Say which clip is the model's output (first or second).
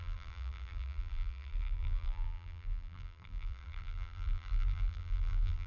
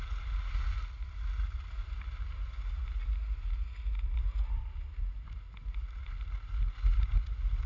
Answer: first